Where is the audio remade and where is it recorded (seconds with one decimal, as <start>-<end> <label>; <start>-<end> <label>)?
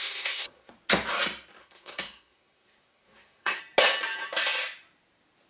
0.0-0.7 remade; 0.7-1.6 recorded; 1.6-3.6 remade; 3.6-5.5 recorded